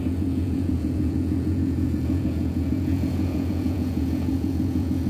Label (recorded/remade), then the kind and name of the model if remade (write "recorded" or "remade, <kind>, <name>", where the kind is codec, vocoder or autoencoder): remade, vocoder, Vocos